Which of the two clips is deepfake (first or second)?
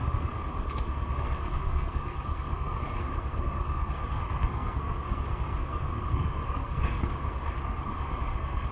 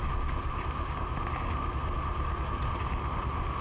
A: first